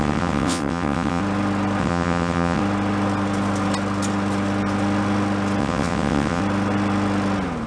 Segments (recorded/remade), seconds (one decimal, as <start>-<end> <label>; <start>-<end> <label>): 0.0-1.2 remade; 1.2-1.8 recorded; 1.8-2.6 remade; 2.6-5.6 recorded; 5.6-6.4 remade; 6.4-7.7 recorded